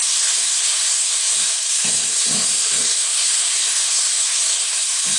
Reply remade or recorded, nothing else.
remade